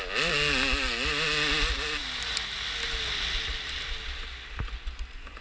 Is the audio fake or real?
real